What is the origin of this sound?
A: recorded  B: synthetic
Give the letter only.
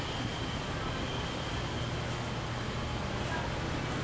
A